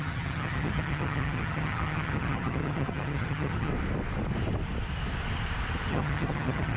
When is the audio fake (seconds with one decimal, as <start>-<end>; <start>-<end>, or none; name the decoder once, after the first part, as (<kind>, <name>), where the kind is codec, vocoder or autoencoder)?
0.0-3.7 (vocoder, HiFi-GAN); 5.9-6.8